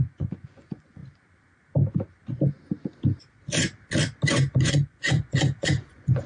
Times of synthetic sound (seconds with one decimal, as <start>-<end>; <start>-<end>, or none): 0.0-1.0; 4.3-6.3